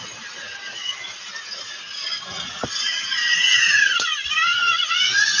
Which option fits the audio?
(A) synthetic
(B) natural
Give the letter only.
B